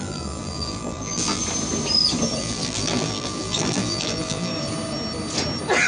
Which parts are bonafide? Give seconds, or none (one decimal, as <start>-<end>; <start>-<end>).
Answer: 1.4-2.4; 4.5-5.9